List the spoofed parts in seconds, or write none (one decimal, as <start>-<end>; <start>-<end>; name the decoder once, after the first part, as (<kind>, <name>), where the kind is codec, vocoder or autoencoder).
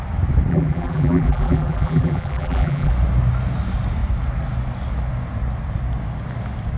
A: 0.5-2.9 (vocoder, BigVGAN v2)